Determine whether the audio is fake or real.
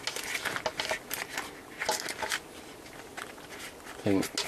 real